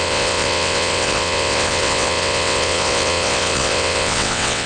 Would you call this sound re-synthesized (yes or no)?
yes